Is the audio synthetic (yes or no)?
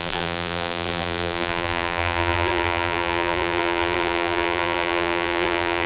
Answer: yes